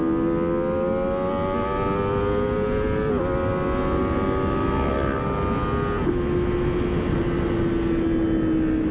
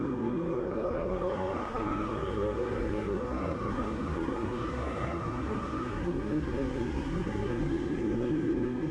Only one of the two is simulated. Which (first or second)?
second